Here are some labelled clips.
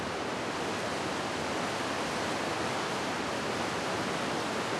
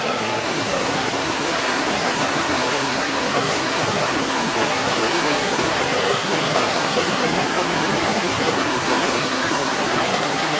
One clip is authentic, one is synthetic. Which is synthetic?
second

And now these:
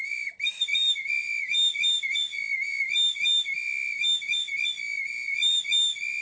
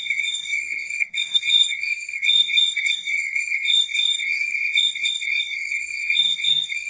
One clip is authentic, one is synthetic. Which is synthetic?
second